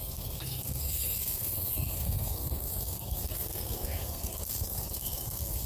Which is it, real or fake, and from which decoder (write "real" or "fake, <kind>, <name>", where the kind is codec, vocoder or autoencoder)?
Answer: fake, codec, SNAC